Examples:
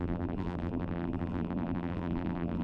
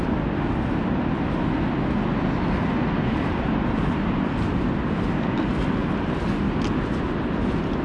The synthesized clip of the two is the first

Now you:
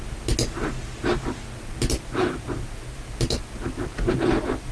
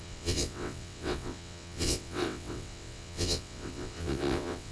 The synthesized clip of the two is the second